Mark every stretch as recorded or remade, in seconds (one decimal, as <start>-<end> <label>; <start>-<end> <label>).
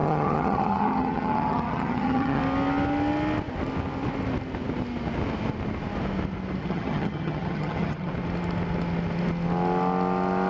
0.0-2.4 remade; 2.4-6.6 recorded; 6.6-8.1 remade; 8.1-10.5 recorded